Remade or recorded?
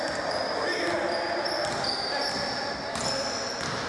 recorded